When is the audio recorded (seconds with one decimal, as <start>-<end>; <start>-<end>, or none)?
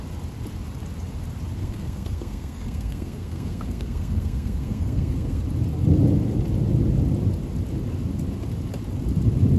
0.0-1.6; 5.4-9.6